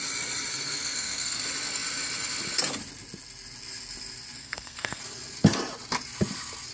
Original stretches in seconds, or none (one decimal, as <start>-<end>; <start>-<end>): 0.0-0.5; 1.4-4.4; 5.0-6.7